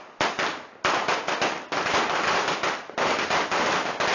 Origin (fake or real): real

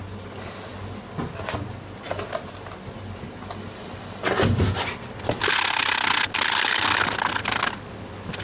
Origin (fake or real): real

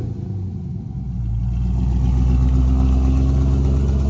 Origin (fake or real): real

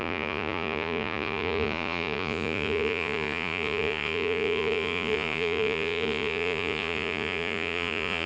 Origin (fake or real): fake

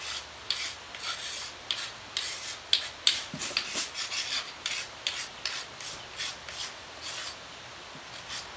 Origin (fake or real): real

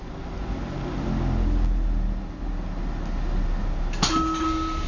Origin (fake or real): real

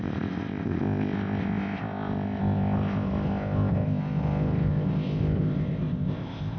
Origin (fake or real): fake